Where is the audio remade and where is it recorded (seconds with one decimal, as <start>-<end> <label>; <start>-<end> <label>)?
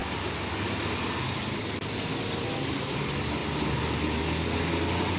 0.0-5.2 recorded